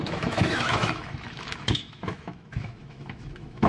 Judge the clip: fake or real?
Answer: fake